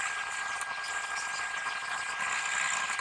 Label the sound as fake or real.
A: real